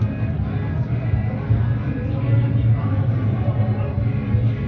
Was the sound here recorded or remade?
recorded